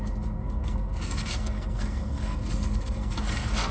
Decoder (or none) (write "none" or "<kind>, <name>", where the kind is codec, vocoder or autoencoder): codec, SNAC